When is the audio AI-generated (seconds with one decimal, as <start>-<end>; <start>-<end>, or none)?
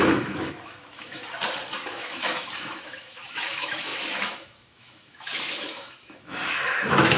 0.0-1.2; 1.9-7.2